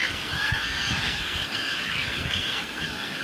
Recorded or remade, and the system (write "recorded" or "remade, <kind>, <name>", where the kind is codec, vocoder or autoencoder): remade, codec, SNAC